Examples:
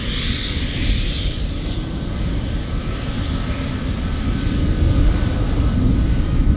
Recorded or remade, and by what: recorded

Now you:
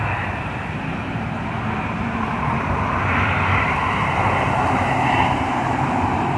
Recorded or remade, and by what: remade, vocoder, BigVGAN v2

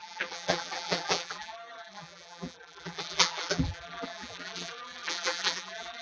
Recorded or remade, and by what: remade, vocoder, BigVGAN v2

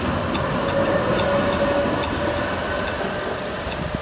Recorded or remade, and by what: recorded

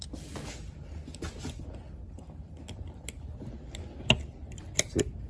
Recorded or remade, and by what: recorded